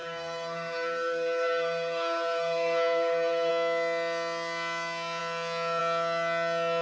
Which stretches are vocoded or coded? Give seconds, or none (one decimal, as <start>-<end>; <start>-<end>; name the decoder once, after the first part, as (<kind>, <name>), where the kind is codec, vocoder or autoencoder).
0.0-3.5 (codec, SNAC)